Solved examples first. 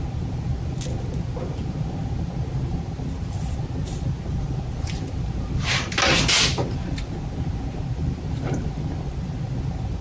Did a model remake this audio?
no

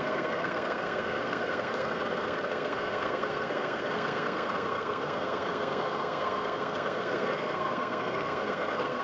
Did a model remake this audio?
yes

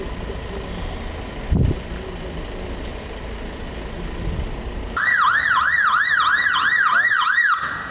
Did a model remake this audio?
no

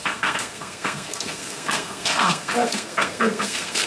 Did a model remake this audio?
yes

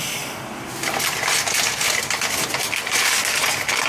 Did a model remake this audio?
no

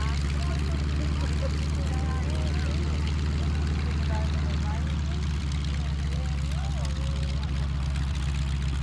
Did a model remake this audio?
no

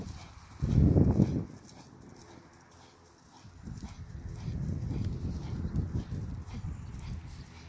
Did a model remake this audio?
no